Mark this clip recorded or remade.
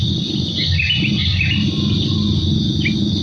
recorded